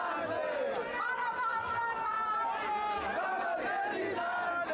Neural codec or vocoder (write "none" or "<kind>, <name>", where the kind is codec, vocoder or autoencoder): none